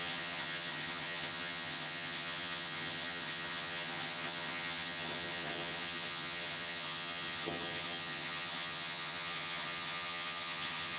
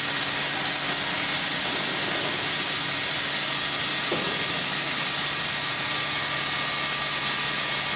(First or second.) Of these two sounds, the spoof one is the first